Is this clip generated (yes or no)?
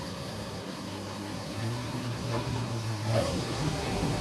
yes